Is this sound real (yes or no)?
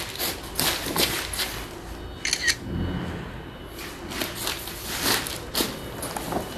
yes